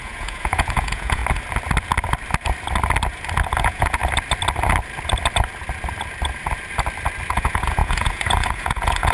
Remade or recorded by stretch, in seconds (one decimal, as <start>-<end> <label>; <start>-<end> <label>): 0.0-1.2 remade; 1.2-3.6 recorded; 3.6-4.0 remade; 4.0-7.3 recorded; 7.3-9.1 remade